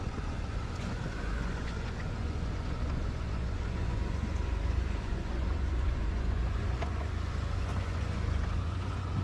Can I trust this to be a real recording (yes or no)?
no